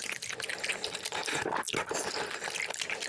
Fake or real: real